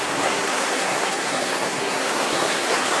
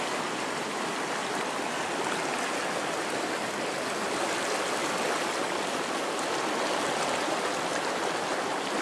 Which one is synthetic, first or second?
first